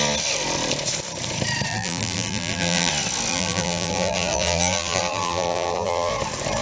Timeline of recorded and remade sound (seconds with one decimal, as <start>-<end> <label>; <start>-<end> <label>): 0.0-1.7 recorded; 1.7-2.9 remade; 2.9-3.3 recorded; 3.3-6.1 remade; 6.1-6.6 recorded